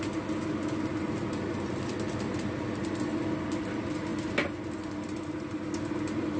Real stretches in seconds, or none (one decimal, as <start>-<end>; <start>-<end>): 0.0-6.4